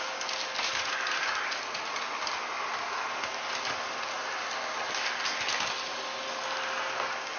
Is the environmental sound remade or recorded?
recorded